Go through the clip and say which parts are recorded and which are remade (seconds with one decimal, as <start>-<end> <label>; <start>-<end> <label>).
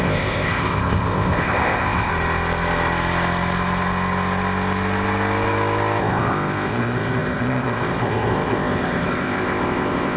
0.0-2.1 remade; 2.1-6.0 recorded; 6.0-10.2 remade